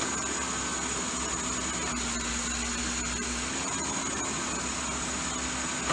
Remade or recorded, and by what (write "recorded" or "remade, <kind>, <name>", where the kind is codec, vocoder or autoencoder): recorded